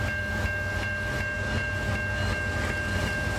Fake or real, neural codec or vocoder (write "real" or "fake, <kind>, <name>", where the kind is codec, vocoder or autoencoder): real